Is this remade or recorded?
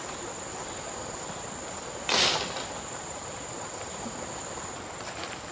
recorded